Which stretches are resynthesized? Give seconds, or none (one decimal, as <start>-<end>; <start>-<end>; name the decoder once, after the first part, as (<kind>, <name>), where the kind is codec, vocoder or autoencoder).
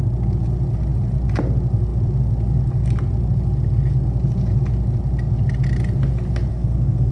6.5-7.1 (codec, SNAC)